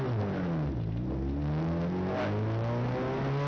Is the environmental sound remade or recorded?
recorded